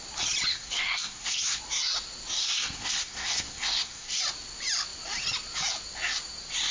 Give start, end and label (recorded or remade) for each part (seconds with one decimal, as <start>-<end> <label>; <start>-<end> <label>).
0.0-0.5 recorded; 0.5-1.6 remade; 1.6-2.4 recorded; 2.4-4.2 remade; 4.2-6.7 recorded